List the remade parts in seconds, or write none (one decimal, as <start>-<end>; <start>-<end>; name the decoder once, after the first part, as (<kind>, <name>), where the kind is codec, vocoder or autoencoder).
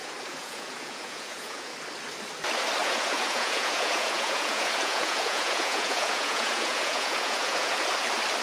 0.0-1.7 (vocoder, Vocos); 2.8-7.8